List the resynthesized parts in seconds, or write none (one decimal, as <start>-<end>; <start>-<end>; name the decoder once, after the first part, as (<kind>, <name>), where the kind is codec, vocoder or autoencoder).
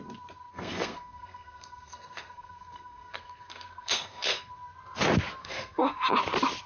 0.5-4.5 (codec, SNAC); 5.4-6.1